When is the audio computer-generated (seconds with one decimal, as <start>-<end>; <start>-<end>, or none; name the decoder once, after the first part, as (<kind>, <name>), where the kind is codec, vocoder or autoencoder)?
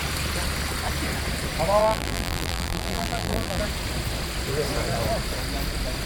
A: 1.8-3.6 (vocoder, BigVGAN v2)